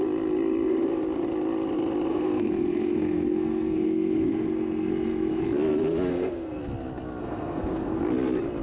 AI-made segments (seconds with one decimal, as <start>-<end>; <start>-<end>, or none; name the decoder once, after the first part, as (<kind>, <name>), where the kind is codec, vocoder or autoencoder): 2.1-5.4 (codec, SNAC); 6.1-6.6; 7.2-8.0